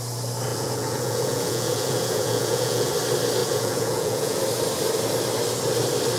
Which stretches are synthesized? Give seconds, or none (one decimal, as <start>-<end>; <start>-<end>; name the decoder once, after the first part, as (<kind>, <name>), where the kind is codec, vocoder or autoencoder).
0.5-2.9 (vocoder, Vocos); 3.4-4.4